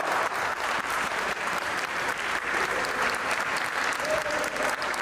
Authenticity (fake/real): fake